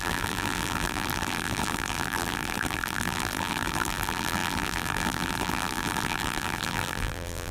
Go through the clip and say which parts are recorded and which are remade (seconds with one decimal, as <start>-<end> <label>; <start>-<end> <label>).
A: 0.0-7.5 remade